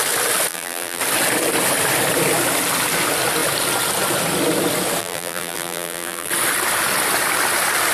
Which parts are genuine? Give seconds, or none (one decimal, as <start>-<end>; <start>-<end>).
0.0-0.5; 1.0-5.0; 6.3-7.9